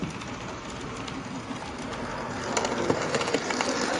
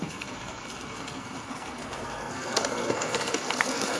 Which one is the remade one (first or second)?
second